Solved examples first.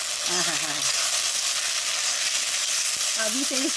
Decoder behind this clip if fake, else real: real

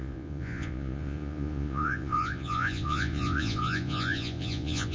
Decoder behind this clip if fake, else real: fake, vocoder, Vocos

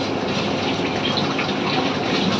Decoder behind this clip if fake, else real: real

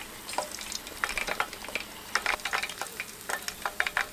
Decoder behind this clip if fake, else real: real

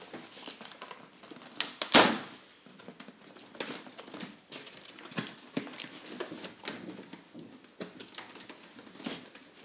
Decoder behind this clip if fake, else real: real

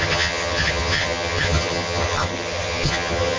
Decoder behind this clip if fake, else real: fake, vocoder, HiFi-GAN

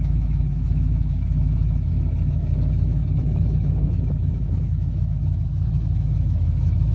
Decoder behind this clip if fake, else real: fake, autoencoder, DAC-VAE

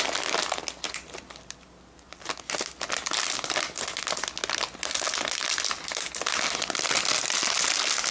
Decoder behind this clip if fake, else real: real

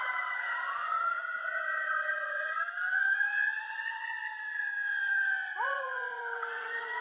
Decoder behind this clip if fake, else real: fake, vocoder, Vocos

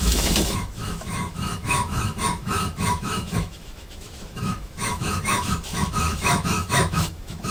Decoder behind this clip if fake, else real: fake, autoencoder, DAC-VAE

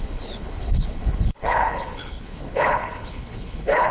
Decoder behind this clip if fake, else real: fake, codec, HILCodec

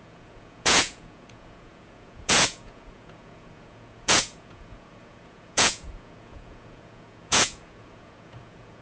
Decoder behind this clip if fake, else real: fake, vocoder, Vocos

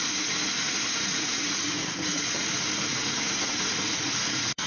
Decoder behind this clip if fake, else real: fake, vocoder, Vocos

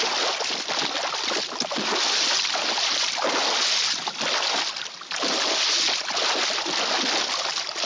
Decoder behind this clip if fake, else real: real